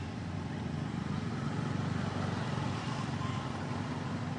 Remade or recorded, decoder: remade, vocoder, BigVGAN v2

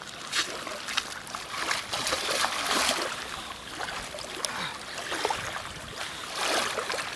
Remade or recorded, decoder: remade, vocoder, BigVGAN v2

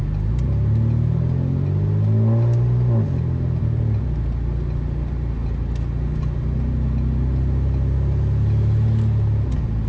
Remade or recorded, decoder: recorded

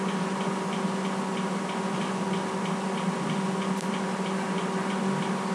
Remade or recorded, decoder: recorded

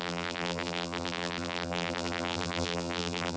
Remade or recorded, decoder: remade, vocoder, BigVGAN v2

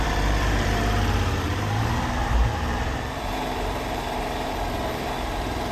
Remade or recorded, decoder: remade, vocoder, BigVGAN v2